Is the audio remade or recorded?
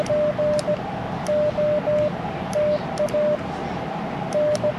recorded